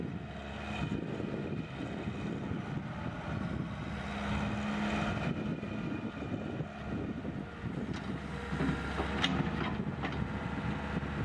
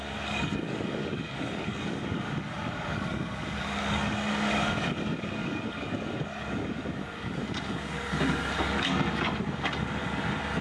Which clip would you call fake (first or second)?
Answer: second